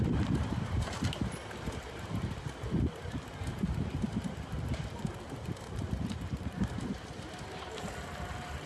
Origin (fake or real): fake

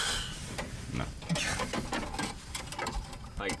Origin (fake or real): real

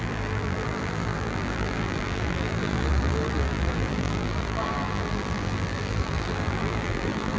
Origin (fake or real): fake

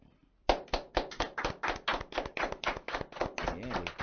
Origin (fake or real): real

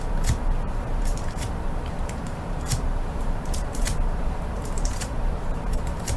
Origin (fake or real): fake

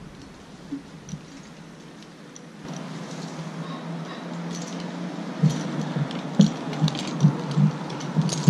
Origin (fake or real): real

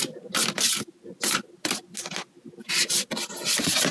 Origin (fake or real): real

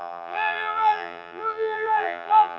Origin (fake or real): fake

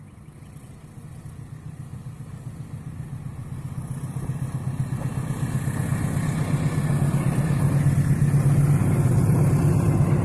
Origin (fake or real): real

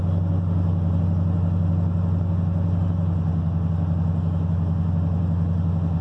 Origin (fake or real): real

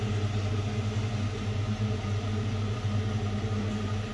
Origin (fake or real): real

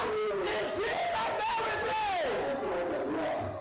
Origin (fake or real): real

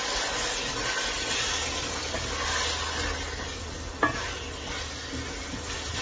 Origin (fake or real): real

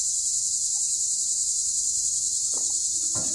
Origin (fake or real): real